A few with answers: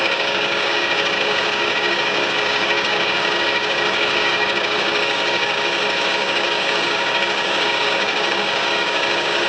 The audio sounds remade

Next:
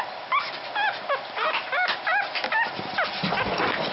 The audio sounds recorded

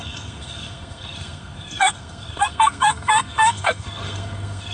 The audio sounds remade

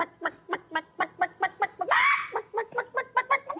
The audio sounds recorded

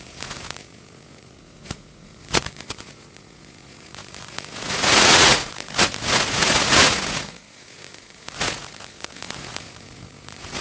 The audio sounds remade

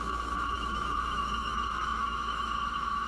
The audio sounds remade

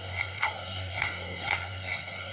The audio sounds remade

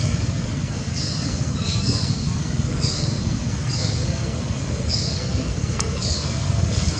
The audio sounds remade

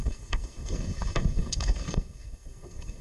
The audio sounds remade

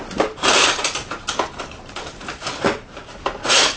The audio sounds remade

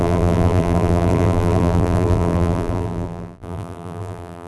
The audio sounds remade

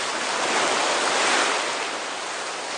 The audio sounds recorded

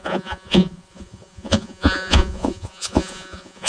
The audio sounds remade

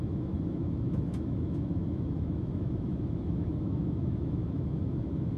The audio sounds remade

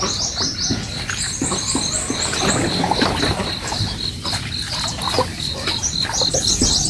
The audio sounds recorded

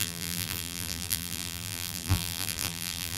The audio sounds remade